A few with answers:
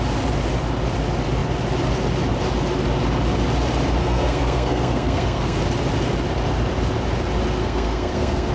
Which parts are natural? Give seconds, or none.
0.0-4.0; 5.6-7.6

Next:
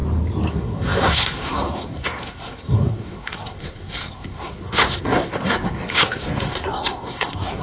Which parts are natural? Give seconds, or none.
0.0-0.5

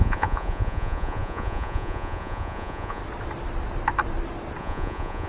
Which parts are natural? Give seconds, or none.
3.0-4.6

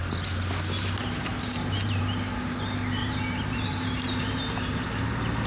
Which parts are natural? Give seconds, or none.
0.0-1.3; 2.0-3.0

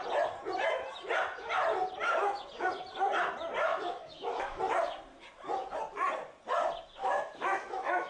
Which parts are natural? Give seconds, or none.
0.0-3.7; 4.6-7.0

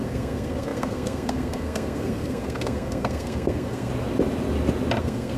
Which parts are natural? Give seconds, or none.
3.9-5.0

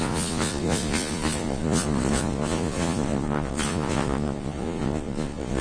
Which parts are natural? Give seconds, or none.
none